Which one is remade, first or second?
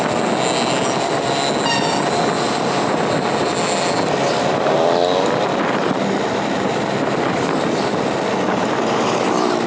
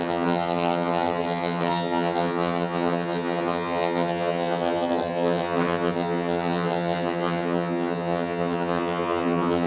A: second